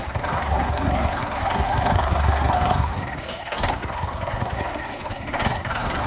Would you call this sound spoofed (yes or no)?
yes